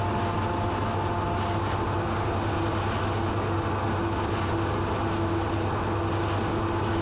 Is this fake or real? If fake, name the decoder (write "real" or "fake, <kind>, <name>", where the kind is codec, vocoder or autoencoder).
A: real